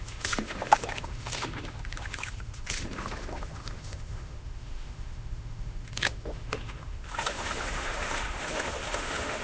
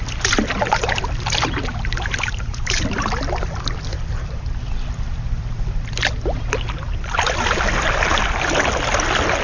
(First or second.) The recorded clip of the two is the second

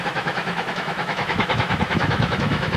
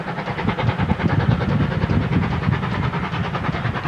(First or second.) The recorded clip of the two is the second